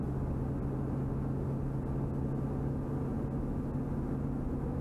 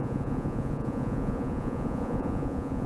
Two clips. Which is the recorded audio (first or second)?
first